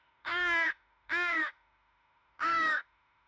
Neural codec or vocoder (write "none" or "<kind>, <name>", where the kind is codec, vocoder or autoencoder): autoencoder, DAC-VAE